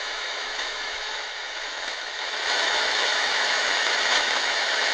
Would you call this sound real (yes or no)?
no